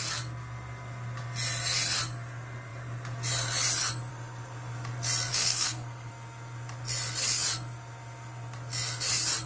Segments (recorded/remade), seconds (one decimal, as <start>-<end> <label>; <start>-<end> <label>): 0.0-5.3 recorded; 5.3-6.1 remade; 6.1-9.5 recorded